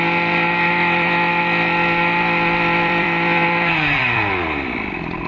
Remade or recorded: remade